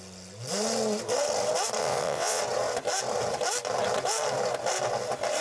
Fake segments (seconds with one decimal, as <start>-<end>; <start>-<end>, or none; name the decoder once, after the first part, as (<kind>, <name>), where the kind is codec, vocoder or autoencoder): 1.8-2.4 (vocoder, WaveNeXt)